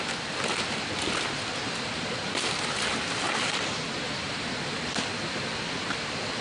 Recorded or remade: recorded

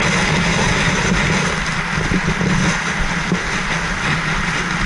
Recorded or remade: recorded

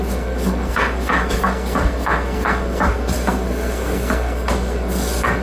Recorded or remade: remade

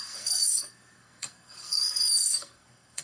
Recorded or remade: remade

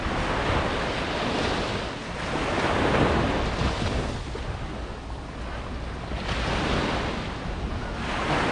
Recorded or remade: recorded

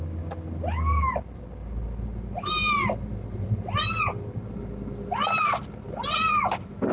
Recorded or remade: recorded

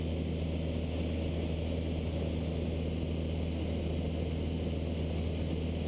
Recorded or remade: recorded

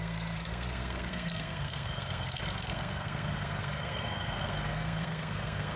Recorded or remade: remade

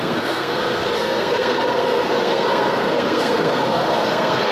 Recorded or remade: remade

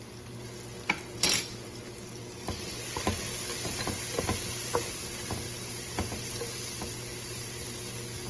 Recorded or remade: recorded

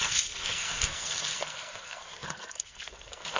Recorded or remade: remade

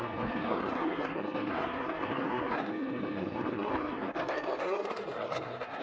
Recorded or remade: remade